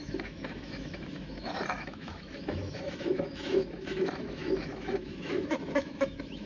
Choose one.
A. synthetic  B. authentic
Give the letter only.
A